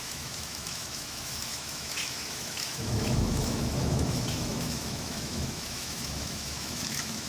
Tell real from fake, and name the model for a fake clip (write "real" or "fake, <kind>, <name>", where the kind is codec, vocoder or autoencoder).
fake, autoencoder, DAC-VAE